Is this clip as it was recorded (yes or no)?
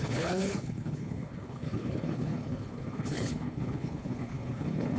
no